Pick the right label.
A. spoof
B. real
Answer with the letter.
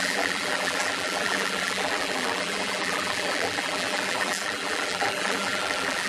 A